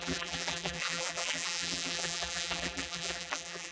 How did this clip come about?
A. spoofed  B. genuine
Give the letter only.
A